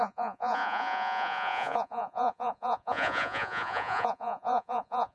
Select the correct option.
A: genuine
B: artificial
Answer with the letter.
B